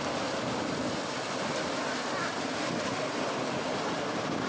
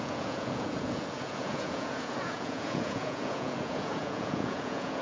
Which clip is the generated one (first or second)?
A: second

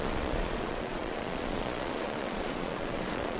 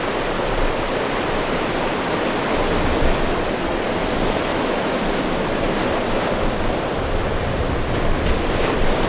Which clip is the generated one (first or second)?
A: first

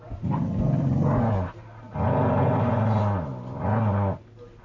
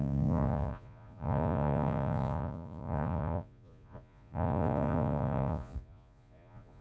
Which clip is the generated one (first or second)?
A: second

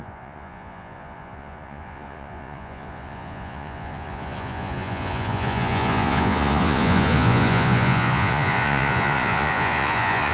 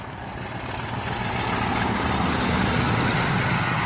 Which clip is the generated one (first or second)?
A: first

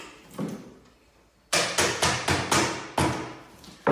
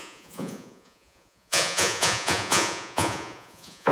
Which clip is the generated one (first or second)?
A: second